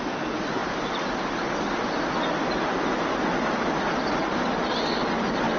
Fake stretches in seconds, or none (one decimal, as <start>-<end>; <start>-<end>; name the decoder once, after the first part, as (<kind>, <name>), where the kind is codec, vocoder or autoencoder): 0.6-4.0 (vocoder, BigVGAN v2)